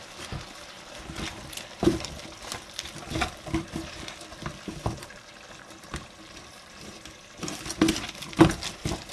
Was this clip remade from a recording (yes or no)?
yes